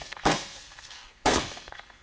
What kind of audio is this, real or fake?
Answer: fake